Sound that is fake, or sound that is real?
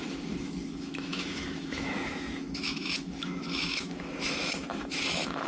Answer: fake